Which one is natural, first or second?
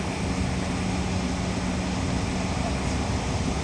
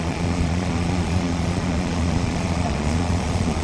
first